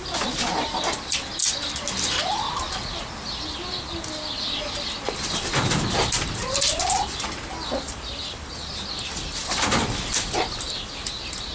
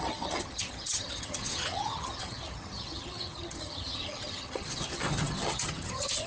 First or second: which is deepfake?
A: second